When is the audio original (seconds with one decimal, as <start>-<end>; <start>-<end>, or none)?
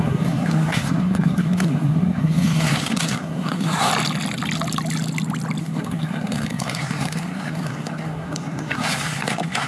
3.9-5.6